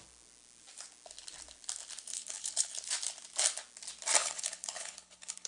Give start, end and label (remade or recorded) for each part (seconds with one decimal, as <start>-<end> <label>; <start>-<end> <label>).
0.0-2.1 recorded; 2.1-2.7 remade; 2.7-4.2 recorded; 4.2-5.5 remade